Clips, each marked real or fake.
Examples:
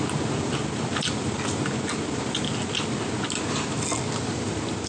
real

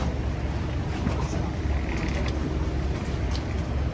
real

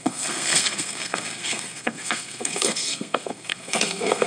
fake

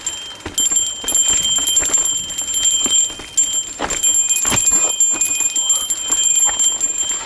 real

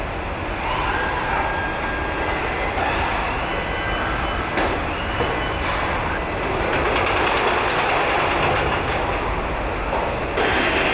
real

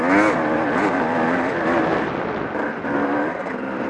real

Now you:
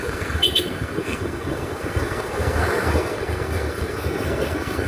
fake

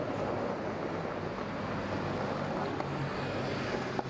real